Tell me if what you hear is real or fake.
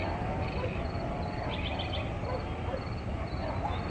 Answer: real